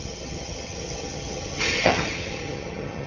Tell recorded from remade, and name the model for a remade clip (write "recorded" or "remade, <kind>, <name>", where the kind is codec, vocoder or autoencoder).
remade, vocoder, HiFi-GAN